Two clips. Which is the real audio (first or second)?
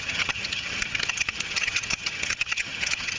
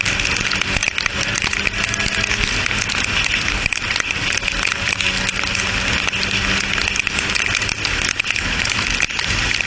second